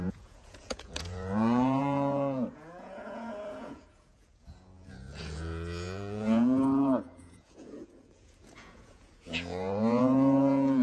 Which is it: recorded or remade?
remade